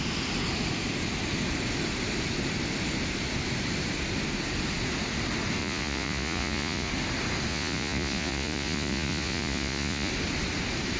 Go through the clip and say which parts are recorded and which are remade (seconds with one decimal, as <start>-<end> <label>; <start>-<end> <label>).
0.0-5.6 recorded; 5.6-6.9 remade; 6.9-7.5 recorded; 7.5-10.1 remade; 10.1-11.0 recorded